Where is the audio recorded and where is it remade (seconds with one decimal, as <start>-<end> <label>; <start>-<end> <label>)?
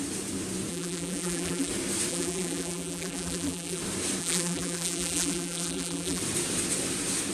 0.0-0.7 recorded; 0.7-1.7 remade; 1.7-2.1 recorded; 2.1-3.8 remade; 3.8-4.2 recorded; 4.2-6.2 remade; 6.2-7.3 recorded